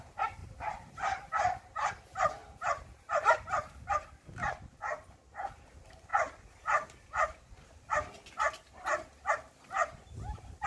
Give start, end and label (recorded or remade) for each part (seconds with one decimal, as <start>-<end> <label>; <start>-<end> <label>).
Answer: 0.0-0.4 recorded; 0.4-1.9 remade; 1.9-2.4 recorded; 2.4-3.9 remade; 3.9-10.7 recorded

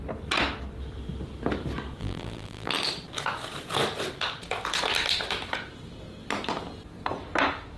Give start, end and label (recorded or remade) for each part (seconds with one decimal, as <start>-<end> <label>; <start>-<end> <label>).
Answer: 0.0-2.0 recorded; 2.0-2.7 remade; 2.7-7.8 recorded

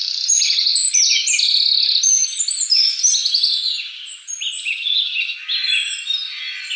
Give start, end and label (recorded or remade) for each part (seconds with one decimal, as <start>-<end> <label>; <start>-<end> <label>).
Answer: 0.0-6.8 recorded